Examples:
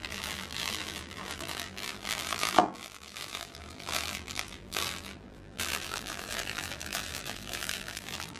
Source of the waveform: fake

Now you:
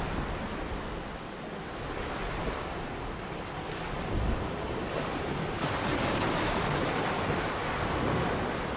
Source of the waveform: real